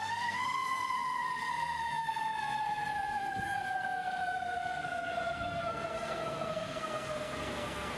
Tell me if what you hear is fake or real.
fake